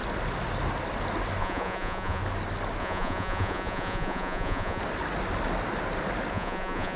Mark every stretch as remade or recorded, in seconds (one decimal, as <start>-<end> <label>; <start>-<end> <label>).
0.0-1.4 recorded; 1.4-2.2 remade; 2.2-2.8 recorded; 2.8-4.8 remade; 4.8-6.3 recorded; 6.3-7.0 remade